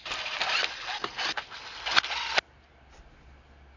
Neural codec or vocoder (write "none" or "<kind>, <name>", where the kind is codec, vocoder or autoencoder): none